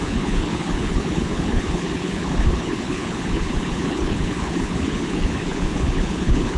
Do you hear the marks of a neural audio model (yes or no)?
yes